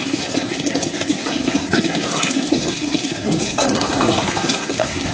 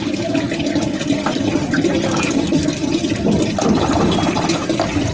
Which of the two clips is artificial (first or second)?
first